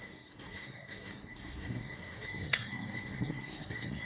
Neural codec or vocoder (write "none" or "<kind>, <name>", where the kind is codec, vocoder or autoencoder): codec, SNAC